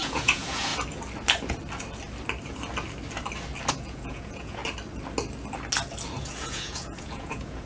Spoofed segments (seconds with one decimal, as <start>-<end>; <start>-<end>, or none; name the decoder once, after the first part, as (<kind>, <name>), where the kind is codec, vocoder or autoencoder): 0.0-0.7 (vocoder, Vocos); 3.7-4.6; 6.2-7.7